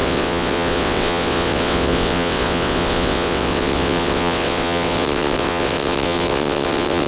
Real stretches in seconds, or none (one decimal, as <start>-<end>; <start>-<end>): none